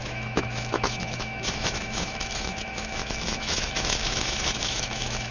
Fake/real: fake